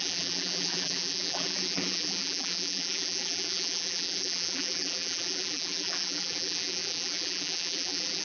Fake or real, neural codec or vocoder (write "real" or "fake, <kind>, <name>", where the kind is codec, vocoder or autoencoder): fake, vocoder, BigVGAN v2